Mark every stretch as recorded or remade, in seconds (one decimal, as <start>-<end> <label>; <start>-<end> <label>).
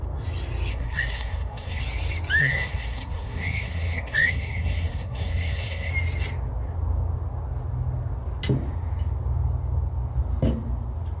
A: 0.0-0.7 recorded; 0.7-1.8 remade; 1.8-2.4 recorded; 2.4-5.9 remade; 5.9-11.2 recorded